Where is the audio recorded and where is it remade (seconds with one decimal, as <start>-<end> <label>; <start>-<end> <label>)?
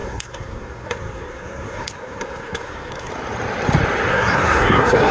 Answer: 0.0-3.1 remade; 3.1-4.1 recorded; 4.1-5.1 remade